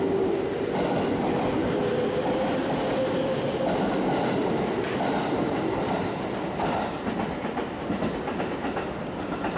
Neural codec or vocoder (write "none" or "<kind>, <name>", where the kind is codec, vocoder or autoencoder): none